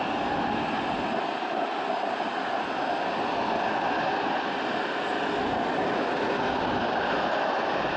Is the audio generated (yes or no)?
no